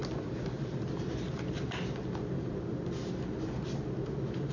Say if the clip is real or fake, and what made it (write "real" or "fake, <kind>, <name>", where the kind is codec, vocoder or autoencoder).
real